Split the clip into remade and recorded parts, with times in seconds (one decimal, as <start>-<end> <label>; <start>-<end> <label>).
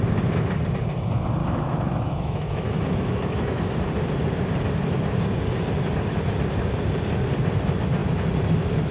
0.0-1.4 recorded; 1.4-3.6 remade; 3.6-8.9 recorded